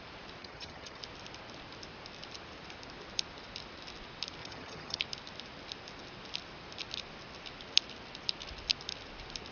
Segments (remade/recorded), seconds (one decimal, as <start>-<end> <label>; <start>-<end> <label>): 0.0-0.4 recorded; 0.4-1.0 remade; 1.0-4.4 recorded; 4.4-5.0 remade; 5.0-9.5 recorded